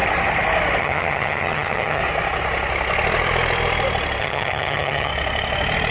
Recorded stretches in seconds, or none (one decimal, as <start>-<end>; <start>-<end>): 0.0-0.8; 2.0-4.2; 5.1-5.9